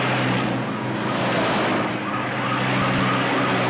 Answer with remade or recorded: recorded